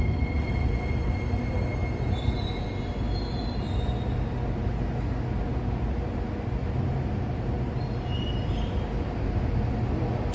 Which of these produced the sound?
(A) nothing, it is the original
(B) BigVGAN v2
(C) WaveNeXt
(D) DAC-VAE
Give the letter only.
A